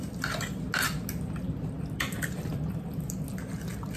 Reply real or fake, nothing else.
real